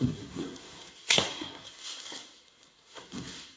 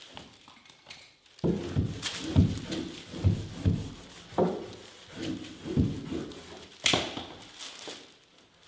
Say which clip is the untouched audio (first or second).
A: second